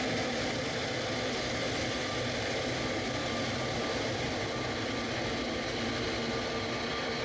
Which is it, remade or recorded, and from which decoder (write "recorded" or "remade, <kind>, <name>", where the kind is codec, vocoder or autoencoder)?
recorded